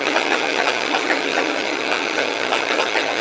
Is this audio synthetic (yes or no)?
yes